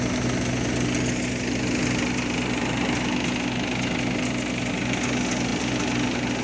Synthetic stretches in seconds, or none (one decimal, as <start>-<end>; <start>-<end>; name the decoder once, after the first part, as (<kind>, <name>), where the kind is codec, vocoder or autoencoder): none